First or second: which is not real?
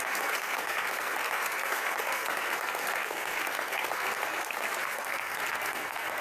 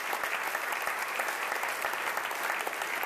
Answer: first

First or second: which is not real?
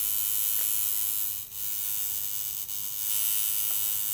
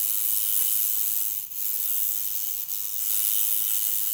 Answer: second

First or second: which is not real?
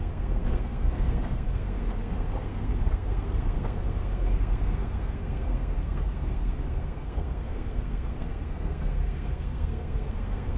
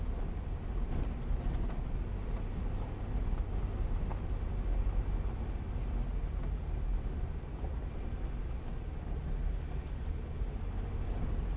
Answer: first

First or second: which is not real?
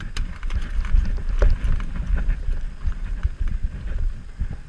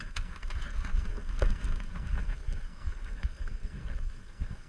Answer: second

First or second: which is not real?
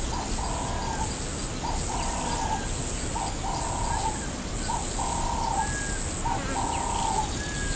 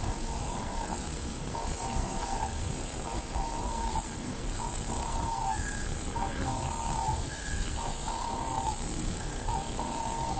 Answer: second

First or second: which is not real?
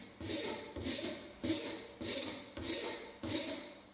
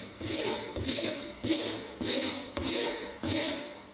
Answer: second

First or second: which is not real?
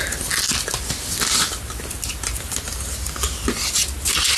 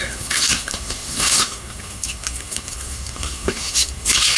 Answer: second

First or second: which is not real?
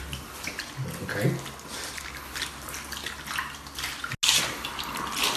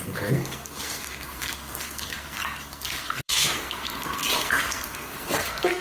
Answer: second